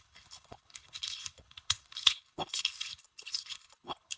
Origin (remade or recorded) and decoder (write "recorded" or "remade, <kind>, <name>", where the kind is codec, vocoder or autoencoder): remade, codec, HILCodec